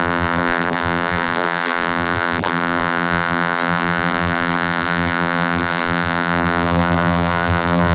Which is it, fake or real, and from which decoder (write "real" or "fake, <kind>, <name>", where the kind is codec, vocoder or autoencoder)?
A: fake, vocoder, BigVGAN v2